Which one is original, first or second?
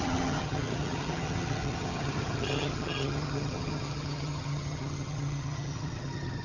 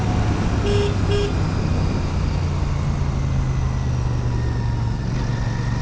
second